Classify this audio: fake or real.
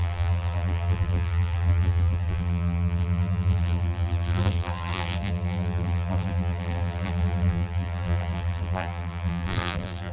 fake